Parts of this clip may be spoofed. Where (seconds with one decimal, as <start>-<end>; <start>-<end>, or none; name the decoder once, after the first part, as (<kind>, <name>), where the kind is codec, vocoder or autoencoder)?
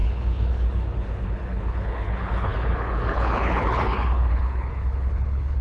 0.0-5.6 (codec, HILCodec)